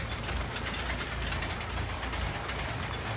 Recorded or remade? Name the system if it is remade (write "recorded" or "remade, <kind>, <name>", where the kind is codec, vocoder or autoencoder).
remade, vocoder, BigVGAN v2